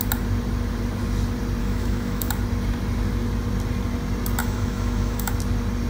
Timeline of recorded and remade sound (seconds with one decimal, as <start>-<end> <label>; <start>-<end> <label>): 0.0-1.6 recorded; 1.6-2.3 remade; 2.3-4.4 recorded; 4.4-5.3 remade; 5.3-5.9 recorded